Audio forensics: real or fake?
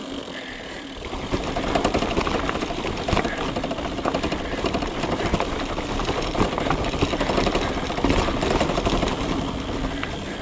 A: real